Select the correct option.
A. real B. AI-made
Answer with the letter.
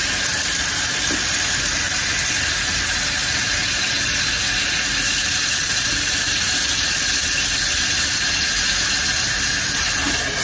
A